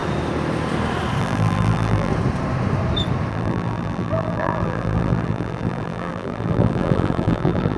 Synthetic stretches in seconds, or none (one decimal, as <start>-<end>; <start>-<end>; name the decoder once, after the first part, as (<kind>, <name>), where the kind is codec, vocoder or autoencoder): 1.2-2.1 (vocoder, BigVGAN v2); 3.3-7.8